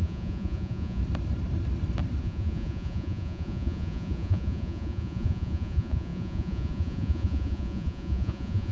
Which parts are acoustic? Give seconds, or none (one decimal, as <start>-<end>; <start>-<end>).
1.0-2.2